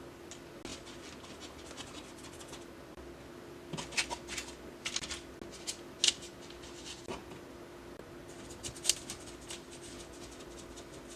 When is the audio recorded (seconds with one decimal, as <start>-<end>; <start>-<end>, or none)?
0.0-11.2

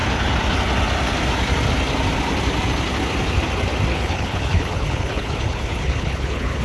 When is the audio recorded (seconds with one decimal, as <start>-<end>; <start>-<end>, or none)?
0.0-3.9